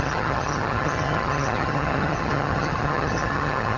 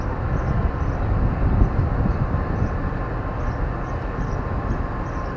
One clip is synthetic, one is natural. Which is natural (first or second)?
second